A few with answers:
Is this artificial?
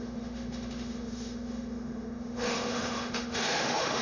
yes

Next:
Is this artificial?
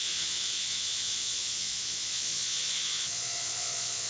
yes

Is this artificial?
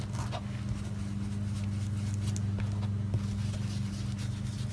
no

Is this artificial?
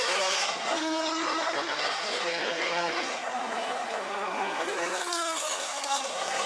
yes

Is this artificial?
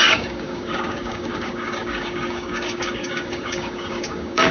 yes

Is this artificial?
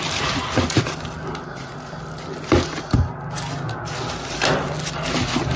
no